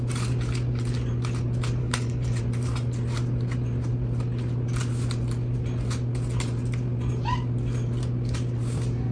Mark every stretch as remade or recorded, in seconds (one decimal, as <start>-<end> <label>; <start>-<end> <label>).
0.0-1.8 recorded; 1.8-2.4 remade; 2.4-9.1 recorded